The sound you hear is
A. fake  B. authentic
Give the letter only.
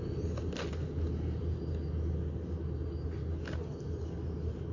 B